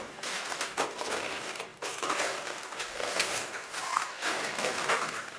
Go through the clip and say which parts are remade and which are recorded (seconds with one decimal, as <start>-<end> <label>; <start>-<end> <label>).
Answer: 0.0-5.4 remade